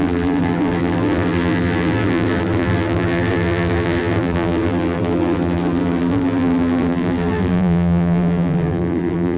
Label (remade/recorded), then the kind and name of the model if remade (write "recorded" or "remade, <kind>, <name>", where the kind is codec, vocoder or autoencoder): remade, vocoder, BigVGAN v2